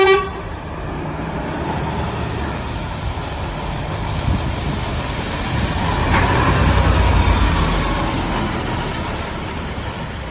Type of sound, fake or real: real